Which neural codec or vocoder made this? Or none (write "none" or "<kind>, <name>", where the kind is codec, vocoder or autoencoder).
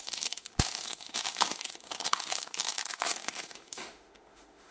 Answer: autoencoder, DAC-VAE